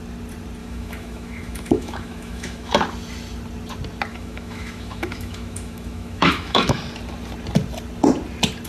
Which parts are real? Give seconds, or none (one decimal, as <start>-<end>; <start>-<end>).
0.0-0.6; 2.7-4.1; 6.8-8.7